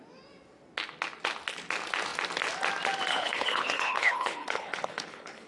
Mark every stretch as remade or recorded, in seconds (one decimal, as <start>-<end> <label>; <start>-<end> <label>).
0.0-3.1 recorded; 3.1-5.5 remade

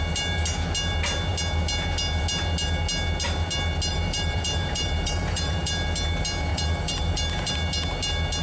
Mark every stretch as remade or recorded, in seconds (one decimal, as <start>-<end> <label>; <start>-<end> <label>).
0.0-3.9 recorded; 3.9-5.7 remade; 5.7-6.5 recorded; 6.5-7.5 remade; 7.5-8.4 recorded

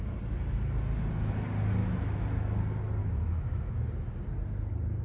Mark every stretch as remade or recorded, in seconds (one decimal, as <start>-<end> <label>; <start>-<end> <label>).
0.0-1.8 recorded; 1.8-2.6 remade; 2.6-3.0 recorded; 3.0-3.7 remade; 3.7-5.0 recorded

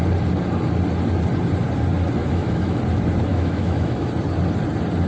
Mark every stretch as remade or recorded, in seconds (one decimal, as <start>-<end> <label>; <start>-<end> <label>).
0.0-2.2 recorded; 2.2-2.8 remade; 2.8-3.3 recorded; 3.3-4.1 remade; 4.1-5.1 recorded

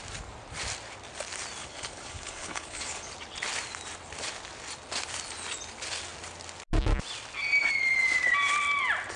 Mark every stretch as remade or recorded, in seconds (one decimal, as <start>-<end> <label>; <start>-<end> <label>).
0.0-1.6 recorded; 1.6-3.1 remade; 3.1-9.2 recorded